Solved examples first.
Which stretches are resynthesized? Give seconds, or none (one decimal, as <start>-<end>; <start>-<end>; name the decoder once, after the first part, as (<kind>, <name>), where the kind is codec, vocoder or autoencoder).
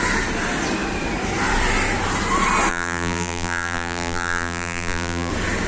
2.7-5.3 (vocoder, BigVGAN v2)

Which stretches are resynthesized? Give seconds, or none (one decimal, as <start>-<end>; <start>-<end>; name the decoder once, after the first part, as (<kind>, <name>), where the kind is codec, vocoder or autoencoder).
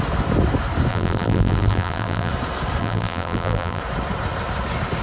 0.9-2.3 (vocoder, BigVGAN v2); 2.8-3.8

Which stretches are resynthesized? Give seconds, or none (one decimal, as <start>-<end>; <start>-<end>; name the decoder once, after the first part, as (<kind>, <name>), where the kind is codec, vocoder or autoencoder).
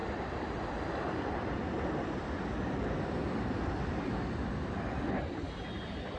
0.0-3.7 (vocoder, BigVGAN v2)